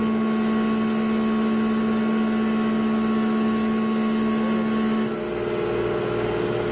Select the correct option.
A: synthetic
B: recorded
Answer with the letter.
B